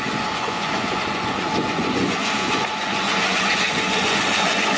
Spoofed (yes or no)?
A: yes